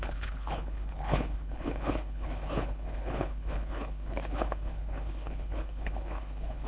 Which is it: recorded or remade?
remade